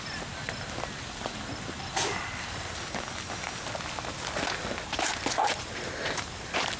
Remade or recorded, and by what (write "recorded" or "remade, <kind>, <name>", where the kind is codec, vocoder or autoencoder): recorded